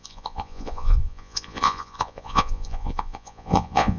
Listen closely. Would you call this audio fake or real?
fake